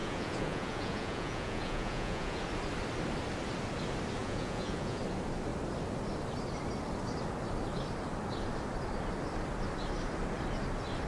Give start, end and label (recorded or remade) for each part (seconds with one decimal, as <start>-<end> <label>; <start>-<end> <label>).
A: 0.0-2.4 remade; 2.4-4.2 recorded; 4.2-5.0 remade; 5.0-11.1 recorded